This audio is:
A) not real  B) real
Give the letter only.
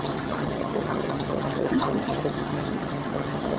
A